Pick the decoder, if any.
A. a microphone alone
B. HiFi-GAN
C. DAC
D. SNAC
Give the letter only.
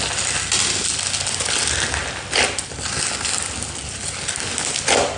A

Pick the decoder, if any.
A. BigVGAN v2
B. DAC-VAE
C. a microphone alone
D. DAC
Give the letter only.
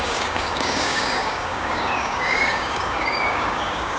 D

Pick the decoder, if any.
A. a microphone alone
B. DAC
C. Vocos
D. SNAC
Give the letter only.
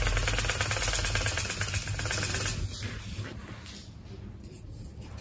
A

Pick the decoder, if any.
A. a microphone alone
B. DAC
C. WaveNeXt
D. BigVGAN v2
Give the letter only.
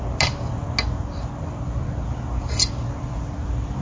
A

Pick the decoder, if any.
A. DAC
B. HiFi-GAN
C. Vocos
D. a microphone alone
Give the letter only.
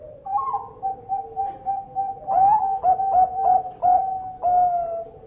D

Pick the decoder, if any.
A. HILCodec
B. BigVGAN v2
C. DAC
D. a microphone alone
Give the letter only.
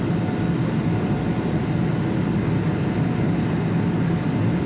D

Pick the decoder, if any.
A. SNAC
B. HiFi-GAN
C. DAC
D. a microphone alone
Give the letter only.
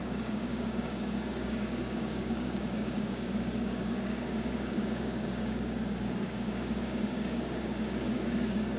C